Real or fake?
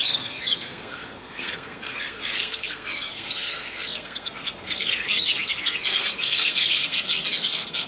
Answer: fake